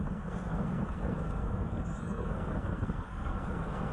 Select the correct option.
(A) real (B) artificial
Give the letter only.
B